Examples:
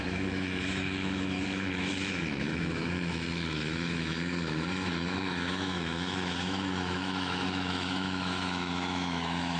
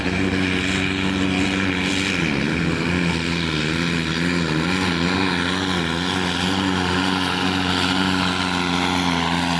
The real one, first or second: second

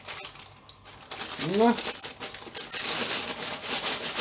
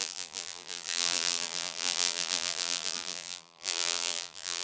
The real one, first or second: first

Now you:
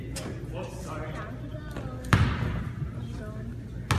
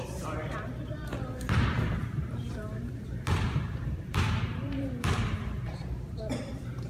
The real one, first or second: first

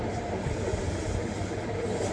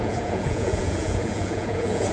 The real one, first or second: first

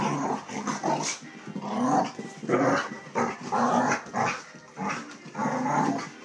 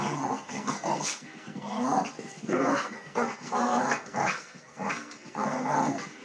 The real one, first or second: first